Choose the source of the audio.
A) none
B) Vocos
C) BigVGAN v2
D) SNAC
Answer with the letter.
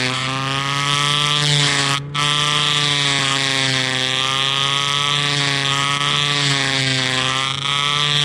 A